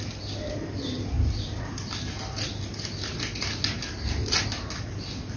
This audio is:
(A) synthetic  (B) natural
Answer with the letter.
B